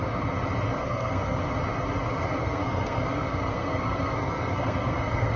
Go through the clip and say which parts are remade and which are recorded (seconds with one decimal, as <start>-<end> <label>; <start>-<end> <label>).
0.0-0.8 recorded; 0.8-1.4 remade; 1.4-2.4 recorded; 2.4-5.4 remade